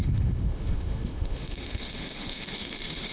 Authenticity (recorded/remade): remade